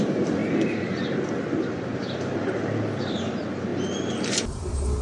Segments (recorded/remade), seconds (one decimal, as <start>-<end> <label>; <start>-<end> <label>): 0.0-3.7 remade; 3.7-4.3 recorded; 4.3-5.0 remade

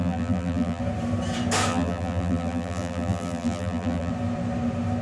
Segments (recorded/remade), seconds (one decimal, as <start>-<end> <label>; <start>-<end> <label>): 0.0-0.8 remade; 0.8-1.7 recorded; 1.7-4.1 remade; 4.1-5.0 recorded

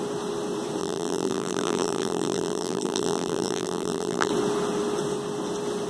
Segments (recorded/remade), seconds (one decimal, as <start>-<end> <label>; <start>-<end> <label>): 0.0-0.8 recorded; 0.8-4.3 remade; 4.3-5.9 recorded

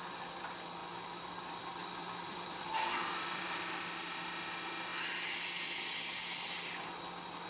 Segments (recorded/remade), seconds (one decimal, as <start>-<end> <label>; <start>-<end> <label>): 0.0-1.8 recorded; 1.8-3.6 remade; 3.6-7.5 recorded